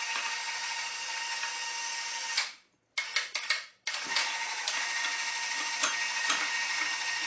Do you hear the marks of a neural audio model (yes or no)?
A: no